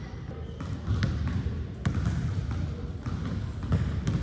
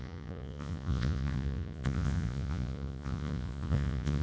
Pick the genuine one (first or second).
first